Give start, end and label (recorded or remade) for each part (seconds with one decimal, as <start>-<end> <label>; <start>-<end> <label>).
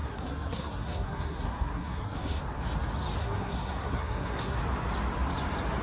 0.0-2.4 remade; 2.4-3.2 recorded; 3.2-4.6 remade; 4.6-5.8 recorded